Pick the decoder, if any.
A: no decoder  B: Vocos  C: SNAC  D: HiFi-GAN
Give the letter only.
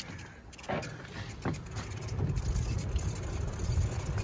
A